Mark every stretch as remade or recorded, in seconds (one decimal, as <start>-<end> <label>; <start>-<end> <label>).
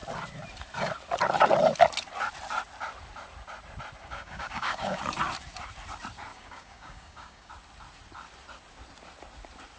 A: 0.0-4.0 recorded; 4.0-5.0 remade; 5.0-6.3 recorded; 6.3-7.5 remade; 7.5-9.8 recorded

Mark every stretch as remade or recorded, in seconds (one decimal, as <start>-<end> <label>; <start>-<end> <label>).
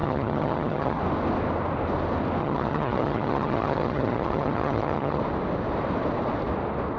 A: 0.0-1.0 remade; 1.0-2.4 recorded; 2.4-5.2 remade; 5.2-7.0 recorded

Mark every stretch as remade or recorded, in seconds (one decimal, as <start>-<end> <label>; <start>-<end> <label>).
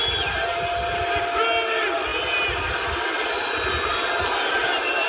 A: 0.0-5.1 recorded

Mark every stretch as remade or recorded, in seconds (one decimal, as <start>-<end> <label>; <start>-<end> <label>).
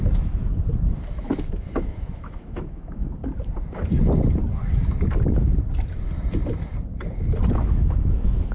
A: 0.0-0.4 remade; 0.4-1.1 recorded; 1.1-3.2 remade; 3.2-7.5 recorded; 7.5-8.5 remade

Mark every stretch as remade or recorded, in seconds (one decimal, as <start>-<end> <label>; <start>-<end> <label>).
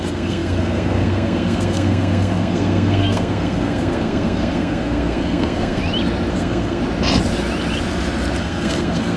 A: 0.0-5.8 remade; 5.8-6.3 recorded; 6.3-6.8 remade; 6.8-8.4 recorded; 8.4-9.2 remade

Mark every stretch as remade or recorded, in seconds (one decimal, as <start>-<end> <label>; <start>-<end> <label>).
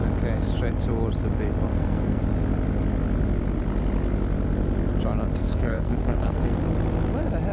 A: 0.0-1.7 recorded; 1.7-2.2 remade; 2.2-5.4 recorded; 5.4-6.6 remade; 6.6-7.5 recorded